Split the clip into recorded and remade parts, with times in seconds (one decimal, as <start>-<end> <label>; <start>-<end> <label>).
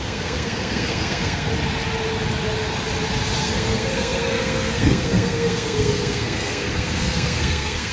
0.0-1.5 remade; 1.5-3.4 recorded; 3.4-7.9 remade